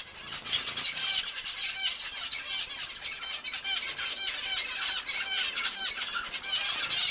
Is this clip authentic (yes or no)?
yes